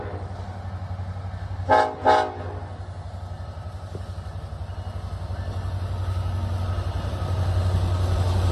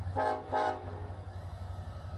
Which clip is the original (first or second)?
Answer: first